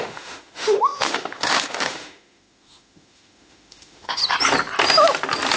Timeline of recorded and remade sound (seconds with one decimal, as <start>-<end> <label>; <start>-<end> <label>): 0.0-4.2 remade; 4.2-5.6 recorded